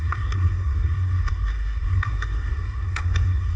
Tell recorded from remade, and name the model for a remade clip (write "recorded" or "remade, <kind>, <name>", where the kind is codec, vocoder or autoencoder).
remade, codec, SNAC